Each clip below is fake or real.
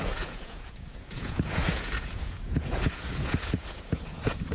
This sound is fake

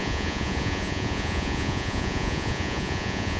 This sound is fake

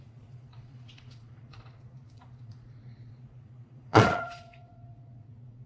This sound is fake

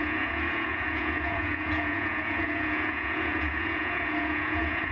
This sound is fake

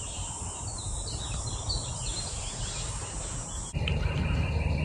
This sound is real